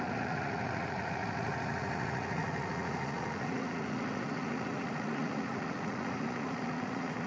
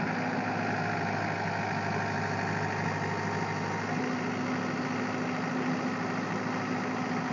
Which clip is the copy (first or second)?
first